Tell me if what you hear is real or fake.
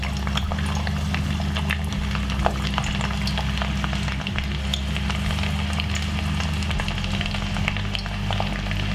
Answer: real